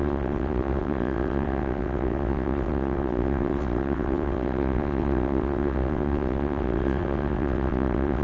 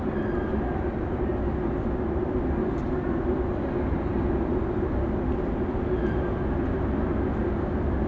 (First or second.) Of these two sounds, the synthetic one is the first